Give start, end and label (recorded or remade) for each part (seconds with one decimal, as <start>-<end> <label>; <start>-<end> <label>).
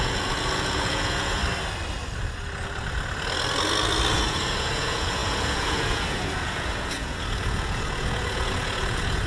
0.0-1.4 remade; 1.4-4.1 recorded; 4.1-9.3 remade